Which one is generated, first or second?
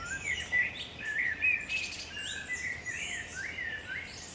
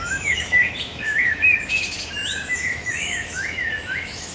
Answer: second